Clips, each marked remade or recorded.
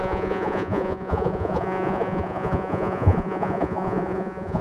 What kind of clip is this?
remade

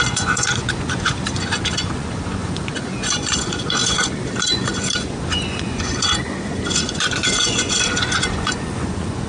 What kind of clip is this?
remade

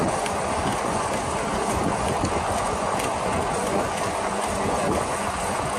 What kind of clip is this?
remade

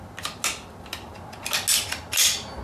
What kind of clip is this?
recorded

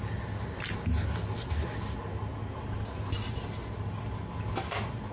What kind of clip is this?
recorded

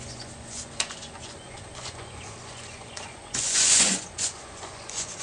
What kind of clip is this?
remade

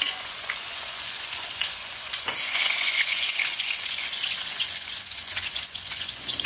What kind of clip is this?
remade